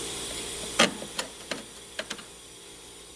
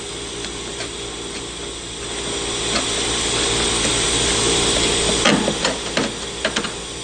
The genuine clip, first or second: second